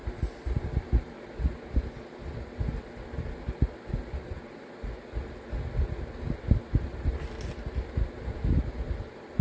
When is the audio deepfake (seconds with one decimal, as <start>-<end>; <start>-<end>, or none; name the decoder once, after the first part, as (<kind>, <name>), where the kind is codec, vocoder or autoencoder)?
none